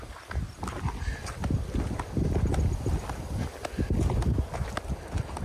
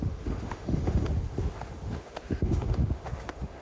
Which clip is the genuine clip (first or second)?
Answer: first